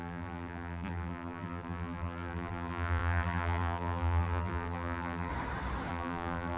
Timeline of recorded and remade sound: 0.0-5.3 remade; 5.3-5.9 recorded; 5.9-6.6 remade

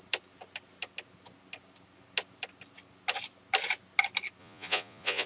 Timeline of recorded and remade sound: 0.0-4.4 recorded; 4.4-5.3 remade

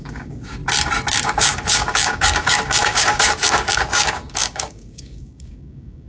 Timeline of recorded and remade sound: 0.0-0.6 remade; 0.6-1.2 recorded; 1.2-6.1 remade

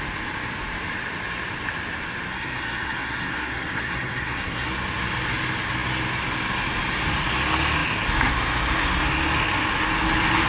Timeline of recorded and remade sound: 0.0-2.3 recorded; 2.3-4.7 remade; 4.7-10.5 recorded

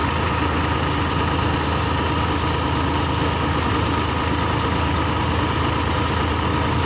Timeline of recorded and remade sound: 0.0-6.9 recorded

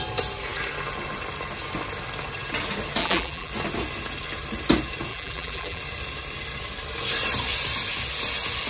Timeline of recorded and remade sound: 0.0-3.0 recorded; 3.0-3.5 remade; 3.5-5.1 recorded; 5.1-5.8 remade; 5.8-8.7 recorded